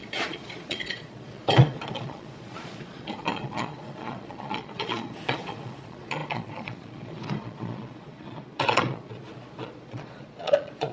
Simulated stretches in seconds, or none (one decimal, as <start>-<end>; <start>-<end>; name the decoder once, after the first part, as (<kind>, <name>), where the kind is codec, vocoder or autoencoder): 0.0-10.9 (vocoder, Vocos)